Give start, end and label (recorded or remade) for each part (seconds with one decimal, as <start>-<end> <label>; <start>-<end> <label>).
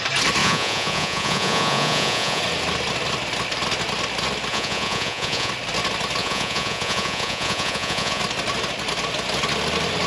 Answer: 0.0-0.4 recorded; 0.4-2.4 remade; 2.4-4.5 recorded; 4.5-5.5 remade; 5.5-6.2 recorded; 6.2-8.2 remade; 8.2-10.1 recorded